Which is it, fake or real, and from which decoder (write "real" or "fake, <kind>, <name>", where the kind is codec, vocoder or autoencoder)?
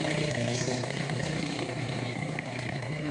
fake, codec, SNAC